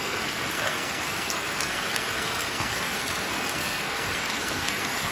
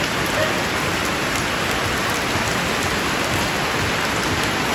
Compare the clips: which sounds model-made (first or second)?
first